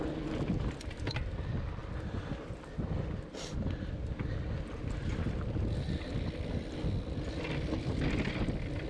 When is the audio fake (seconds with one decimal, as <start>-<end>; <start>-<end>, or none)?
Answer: none